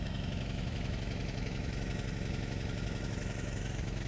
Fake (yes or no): yes